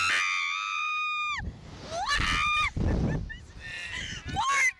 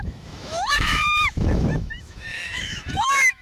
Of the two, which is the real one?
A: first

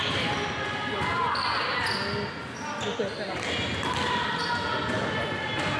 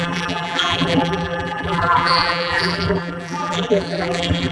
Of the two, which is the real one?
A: first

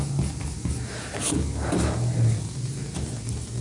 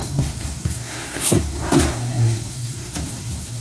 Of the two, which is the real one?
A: first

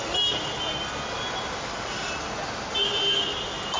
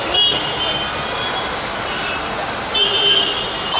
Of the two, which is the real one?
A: first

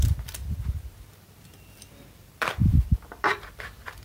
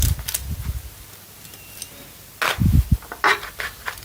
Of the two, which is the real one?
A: second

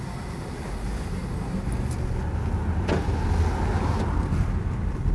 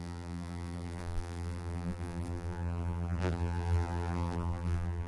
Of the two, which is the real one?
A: first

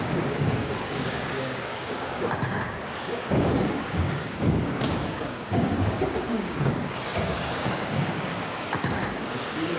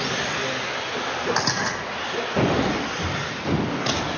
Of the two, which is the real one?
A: second